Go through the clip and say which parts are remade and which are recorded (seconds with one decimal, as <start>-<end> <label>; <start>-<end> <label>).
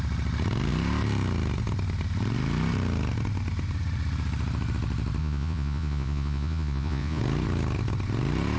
0.0-5.2 recorded; 5.2-7.2 remade; 7.2-8.6 recorded